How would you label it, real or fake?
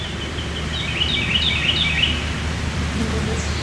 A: real